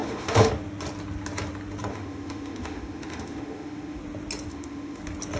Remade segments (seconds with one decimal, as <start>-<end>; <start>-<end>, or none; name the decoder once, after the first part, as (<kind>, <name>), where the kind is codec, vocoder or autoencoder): 0.0-0.5 (autoencoder, DAC-VAE); 1.9-4.0; 4.5-5.0